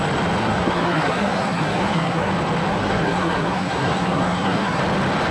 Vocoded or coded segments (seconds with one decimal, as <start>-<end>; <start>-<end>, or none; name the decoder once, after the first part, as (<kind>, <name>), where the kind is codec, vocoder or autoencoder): 0.4-2.3 (codec, SNAC); 2.7-4.8